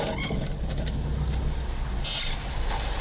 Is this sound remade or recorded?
recorded